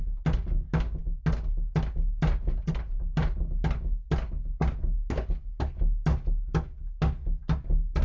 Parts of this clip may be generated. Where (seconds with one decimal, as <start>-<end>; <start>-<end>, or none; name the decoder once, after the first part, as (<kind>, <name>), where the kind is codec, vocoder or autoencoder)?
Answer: none

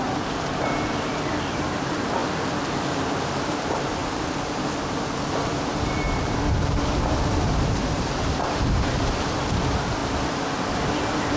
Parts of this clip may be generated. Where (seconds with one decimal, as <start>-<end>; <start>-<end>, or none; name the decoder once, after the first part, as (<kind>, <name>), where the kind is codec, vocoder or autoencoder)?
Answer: 0.0-2.2 (vocoder, BigVGAN v2); 2.7-10.0; 11.0-11.4